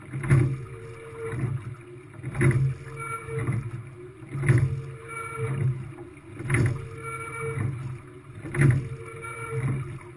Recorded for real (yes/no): yes